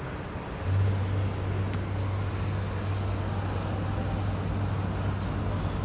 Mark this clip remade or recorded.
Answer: recorded